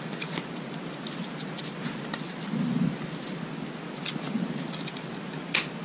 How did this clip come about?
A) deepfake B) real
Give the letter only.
B